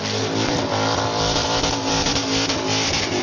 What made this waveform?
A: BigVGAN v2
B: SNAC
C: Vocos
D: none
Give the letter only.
A